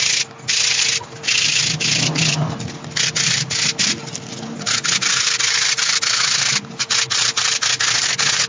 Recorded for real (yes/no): yes